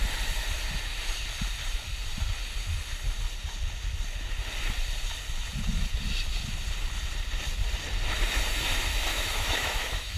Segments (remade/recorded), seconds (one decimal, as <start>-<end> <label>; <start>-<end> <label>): 0.0-9.1 recorded; 9.1-10.2 remade